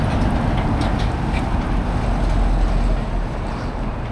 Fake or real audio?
real